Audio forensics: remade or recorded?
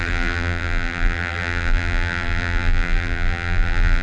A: remade